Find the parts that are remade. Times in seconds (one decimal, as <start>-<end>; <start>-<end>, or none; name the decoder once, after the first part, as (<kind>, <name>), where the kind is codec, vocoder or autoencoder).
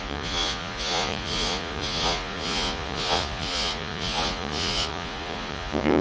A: 0.0-6.0 (vocoder, Vocos)